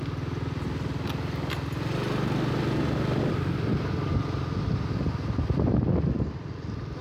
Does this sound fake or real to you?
real